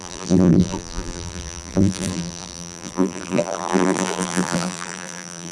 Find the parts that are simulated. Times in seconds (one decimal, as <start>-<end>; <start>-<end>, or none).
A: 0.0-5.5